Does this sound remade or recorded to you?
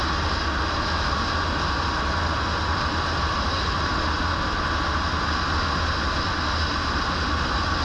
recorded